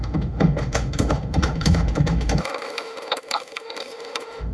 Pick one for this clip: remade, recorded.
remade